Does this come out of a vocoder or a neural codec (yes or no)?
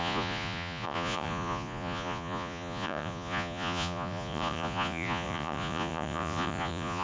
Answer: yes